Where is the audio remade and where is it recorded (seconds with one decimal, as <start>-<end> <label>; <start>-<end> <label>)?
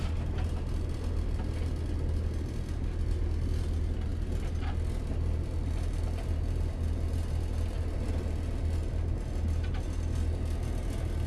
0.0-11.3 recorded